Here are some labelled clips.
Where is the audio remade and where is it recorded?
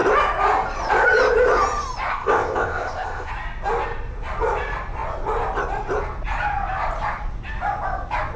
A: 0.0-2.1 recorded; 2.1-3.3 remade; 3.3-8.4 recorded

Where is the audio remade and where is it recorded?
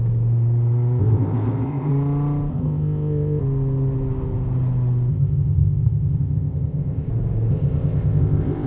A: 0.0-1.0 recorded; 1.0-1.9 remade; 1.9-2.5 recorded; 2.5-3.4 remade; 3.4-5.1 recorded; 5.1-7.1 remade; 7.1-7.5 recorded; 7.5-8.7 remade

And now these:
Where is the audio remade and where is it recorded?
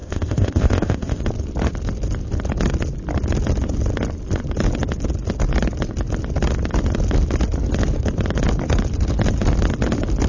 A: 0.0-1.2 remade; 1.2-10.3 recorded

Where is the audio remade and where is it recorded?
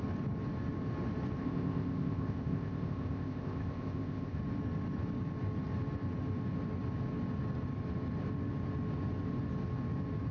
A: 0.0-1.4 recorded; 1.4-4.4 remade; 4.4-10.3 recorded